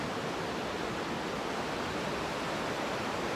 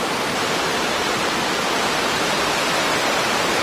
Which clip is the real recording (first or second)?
first